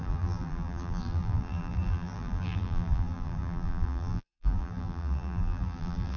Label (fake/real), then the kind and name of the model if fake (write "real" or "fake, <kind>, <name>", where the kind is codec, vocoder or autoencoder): fake, vocoder, BigVGAN v2